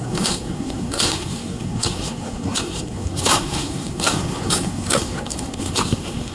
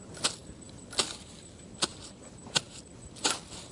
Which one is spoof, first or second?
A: first